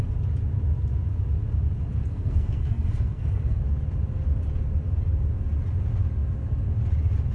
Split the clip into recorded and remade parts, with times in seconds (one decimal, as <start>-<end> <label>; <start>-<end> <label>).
0.0-2.1 recorded; 2.1-3.6 remade; 3.6-7.3 recorded